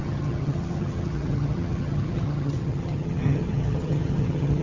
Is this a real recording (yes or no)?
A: no